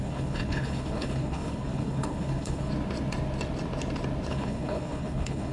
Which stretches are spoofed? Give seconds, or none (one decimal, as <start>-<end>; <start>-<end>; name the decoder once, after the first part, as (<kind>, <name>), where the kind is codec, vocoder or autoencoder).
0.0-2.7 (codec, HILCodec); 4.3-5.5